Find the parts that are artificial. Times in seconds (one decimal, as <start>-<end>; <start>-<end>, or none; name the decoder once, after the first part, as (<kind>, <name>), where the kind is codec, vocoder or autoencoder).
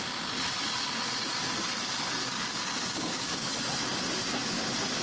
2.2-3.5 (codec, DAC)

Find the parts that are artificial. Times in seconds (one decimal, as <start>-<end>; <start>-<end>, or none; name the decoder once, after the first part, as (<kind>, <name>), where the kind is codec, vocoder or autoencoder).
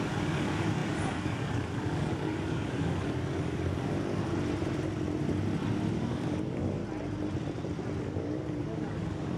0.0-4.3 (codec, DAC); 5.9-6.8; 8.0-9.4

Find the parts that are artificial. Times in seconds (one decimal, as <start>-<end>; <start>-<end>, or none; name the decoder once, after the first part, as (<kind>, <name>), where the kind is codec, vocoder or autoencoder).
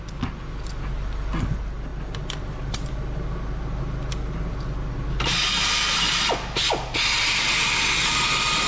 none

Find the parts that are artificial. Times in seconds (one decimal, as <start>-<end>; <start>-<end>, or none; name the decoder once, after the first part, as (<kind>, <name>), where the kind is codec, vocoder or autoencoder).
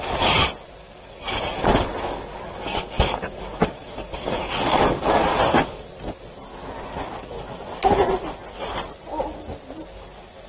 0.8-5.4 (codec, DAC)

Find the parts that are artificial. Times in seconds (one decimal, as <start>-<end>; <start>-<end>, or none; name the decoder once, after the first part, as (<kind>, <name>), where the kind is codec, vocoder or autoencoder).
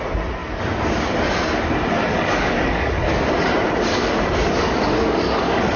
2.1-3.2 (codec, DAC); 3.9-5.8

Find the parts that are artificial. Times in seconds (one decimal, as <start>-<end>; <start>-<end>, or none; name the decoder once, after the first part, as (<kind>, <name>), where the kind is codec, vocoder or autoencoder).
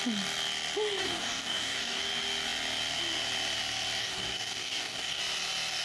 1.0-2.0 (codec, DAC); 4.0-5.2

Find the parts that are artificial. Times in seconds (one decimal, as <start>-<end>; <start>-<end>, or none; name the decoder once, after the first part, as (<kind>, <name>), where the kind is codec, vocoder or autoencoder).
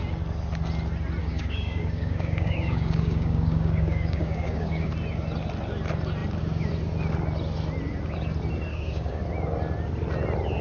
1.2-4.9 (codec, DAC); 8.7-9.2